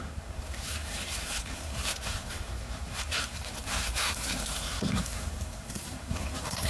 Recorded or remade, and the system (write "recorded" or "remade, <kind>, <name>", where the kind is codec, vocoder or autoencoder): remade, codec, SNAC